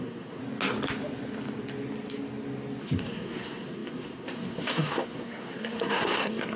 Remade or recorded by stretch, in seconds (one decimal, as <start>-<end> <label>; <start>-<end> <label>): 0.0-0.4 remade; 0.4-2.8 recorded; 2.8-6.6 remade